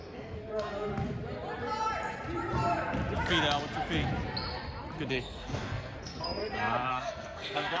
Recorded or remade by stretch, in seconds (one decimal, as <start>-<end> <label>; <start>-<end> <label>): 0.0-0.9 remade; 0.9-5.1 recorded; 5.1-6.4 remade; 6.4-6.9 recorded; 6.9-7.8 remade